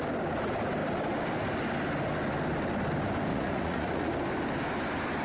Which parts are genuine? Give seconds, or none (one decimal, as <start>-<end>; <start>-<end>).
0.0-3.3; 4.1-5.2